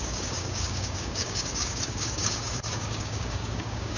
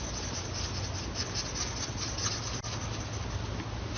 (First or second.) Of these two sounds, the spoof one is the first